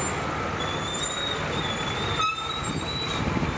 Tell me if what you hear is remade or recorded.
recorded